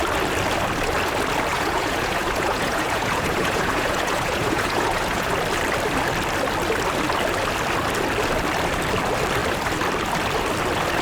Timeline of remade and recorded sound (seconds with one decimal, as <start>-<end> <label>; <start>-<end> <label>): 0.0-1.5 recorded; 1.5-5.3 remade; 5.3-11.0 recorded